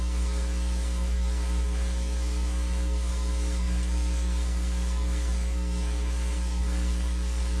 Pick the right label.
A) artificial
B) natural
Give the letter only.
A